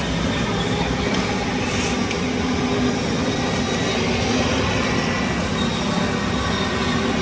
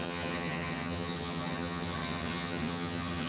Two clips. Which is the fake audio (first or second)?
second